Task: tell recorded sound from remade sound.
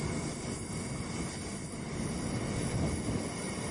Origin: recorded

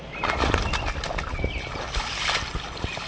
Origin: recorded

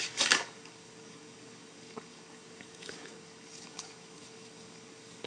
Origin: remade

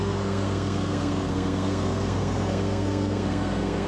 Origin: remade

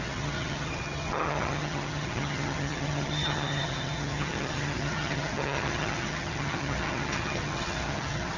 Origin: remade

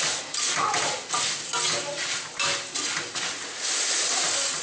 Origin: recorded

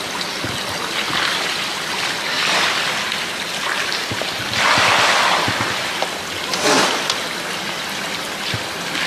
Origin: recorded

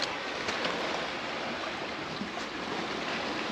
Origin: recorded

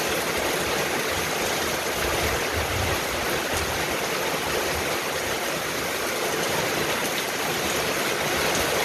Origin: recorded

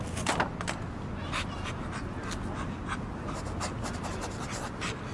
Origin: recorded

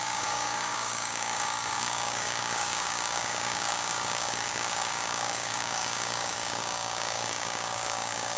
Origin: remade